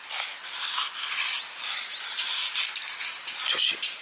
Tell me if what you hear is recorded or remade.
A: recorded